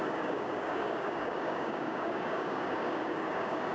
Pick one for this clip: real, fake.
fake